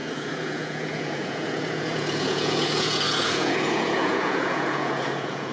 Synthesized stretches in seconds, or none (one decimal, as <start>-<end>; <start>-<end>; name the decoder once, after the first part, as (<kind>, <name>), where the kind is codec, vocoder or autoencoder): 0.0-5.5 (vocoder, Vocos)